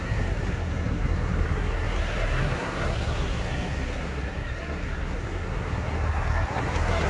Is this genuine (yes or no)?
no